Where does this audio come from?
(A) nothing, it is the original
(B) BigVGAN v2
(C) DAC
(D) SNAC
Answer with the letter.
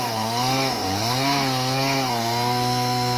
D